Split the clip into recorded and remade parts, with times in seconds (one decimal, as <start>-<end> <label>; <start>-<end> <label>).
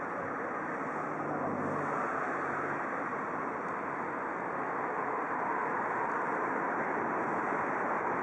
0.0-8.2 recorded